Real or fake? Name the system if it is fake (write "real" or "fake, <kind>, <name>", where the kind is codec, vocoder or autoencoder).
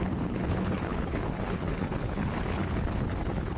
fake, codec, HILCodec